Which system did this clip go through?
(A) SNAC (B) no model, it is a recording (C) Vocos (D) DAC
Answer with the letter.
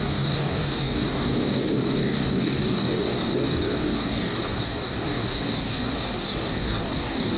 D